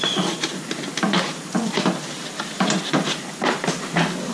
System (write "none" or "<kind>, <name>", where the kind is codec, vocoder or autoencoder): none